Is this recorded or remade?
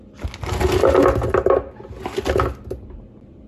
recorded